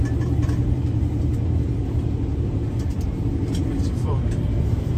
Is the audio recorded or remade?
remade